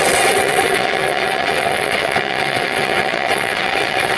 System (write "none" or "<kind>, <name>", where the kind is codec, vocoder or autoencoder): vocoder, WaveNeXt